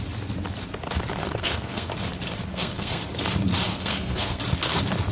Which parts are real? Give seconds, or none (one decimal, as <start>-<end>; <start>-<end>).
0.0-1.2; 1.9-2.5; 3.0-3.7; 4.4-5.1